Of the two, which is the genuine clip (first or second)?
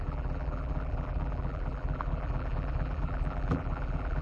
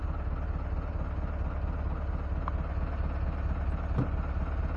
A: second